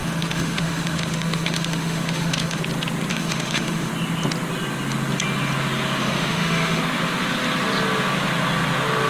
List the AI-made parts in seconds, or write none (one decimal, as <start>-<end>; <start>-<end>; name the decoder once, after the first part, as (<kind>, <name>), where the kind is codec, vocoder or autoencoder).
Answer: 0.0-2.6 (autoencoder, DAC-VAE); 3.1-3.9; 6.0-6.8